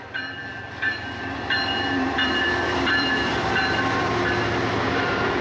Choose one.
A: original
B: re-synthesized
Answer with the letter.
B